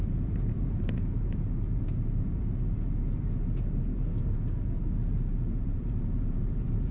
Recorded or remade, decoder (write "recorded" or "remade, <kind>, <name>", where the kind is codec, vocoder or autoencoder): remade, vocoder, BigVGAN v2